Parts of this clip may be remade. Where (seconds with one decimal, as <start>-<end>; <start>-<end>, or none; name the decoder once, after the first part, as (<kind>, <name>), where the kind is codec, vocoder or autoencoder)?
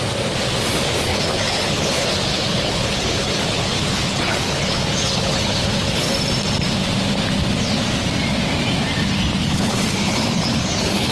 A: 1.1-6.1 (codec, HILCodec); 9.4-11.1